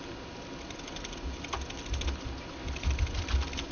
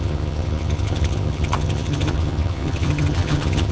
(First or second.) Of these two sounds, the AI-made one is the second